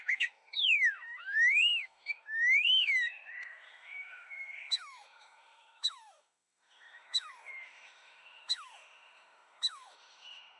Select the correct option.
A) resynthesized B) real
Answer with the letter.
A